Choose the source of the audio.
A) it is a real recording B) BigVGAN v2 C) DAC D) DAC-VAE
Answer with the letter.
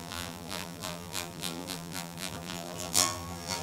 B